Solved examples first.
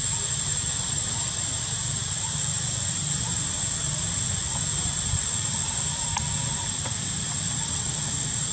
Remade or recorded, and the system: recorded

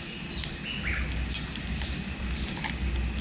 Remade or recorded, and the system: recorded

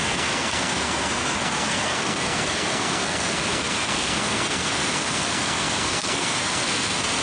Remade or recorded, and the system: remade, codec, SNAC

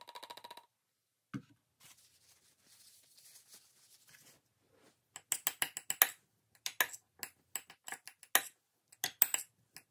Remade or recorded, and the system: recorded